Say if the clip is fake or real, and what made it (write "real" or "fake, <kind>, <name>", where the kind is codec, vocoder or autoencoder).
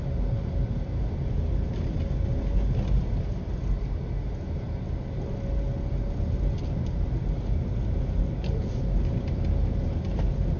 real